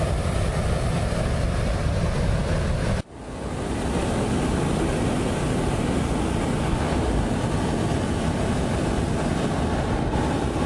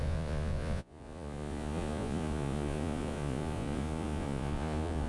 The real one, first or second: first